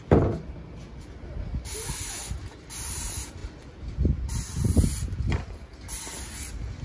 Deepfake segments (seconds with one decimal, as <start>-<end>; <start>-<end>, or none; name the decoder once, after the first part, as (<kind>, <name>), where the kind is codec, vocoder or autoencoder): none

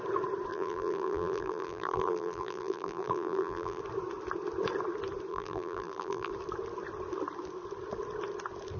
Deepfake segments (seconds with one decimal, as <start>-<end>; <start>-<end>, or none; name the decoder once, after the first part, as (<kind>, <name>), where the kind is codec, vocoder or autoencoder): 0.5-3.8 (vocoder, BigVGAN v2); 5.3-6.3